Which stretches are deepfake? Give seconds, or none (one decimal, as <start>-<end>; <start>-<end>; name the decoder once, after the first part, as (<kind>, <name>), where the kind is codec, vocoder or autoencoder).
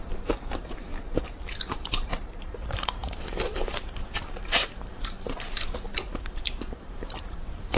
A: 0.0-0.9 (vocoder, BigVGAN v2); 1.7-7.8